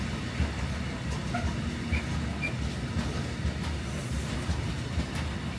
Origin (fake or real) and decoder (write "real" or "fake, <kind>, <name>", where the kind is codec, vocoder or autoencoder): real